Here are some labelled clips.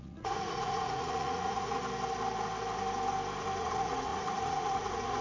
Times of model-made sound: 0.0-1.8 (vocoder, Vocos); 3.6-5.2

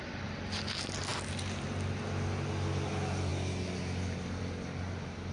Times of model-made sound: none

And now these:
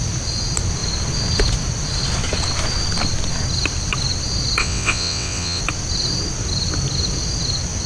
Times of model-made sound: 4.6-5.6 (vocoder, WaveNeXt)

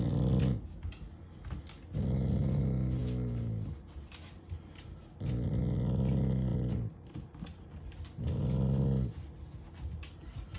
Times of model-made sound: none

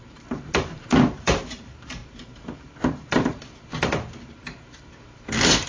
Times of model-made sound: 0.0-5.7 (vocoder, BigVGAN v2)

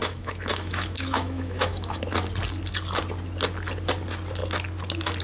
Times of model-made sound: 0.0-2.0 (autoencoder, DAC-VAE)

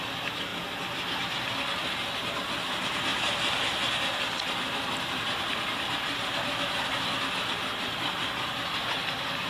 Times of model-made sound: none

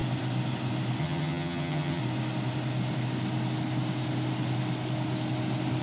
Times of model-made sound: 1.0-2.0 (vocoder, HiFi-GAN)